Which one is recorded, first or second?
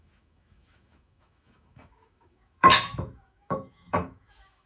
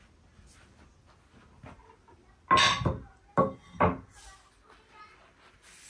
second